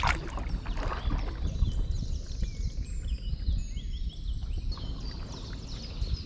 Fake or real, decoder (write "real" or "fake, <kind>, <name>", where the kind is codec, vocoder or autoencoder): real